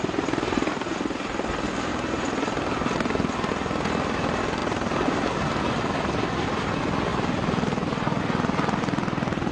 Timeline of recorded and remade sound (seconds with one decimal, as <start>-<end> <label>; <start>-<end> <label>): 0.0-9.5 recorded